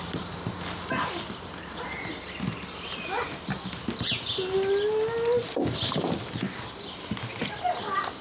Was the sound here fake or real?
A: real